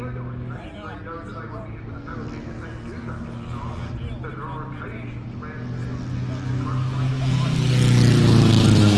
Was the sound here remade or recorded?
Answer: recorded